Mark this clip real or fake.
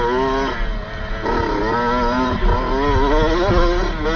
real